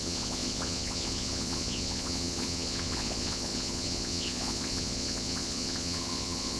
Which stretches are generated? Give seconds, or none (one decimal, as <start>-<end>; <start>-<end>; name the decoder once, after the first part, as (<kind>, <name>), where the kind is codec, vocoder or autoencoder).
0.0-6.6 (vocoder, Vocos)